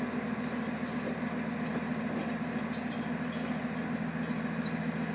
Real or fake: real